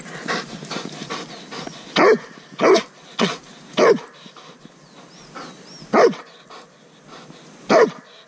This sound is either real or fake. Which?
real